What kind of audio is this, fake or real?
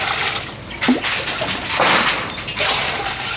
real